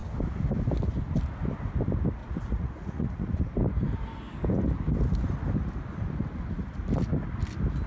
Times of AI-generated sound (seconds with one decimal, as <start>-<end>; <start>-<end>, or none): 2.2-3.4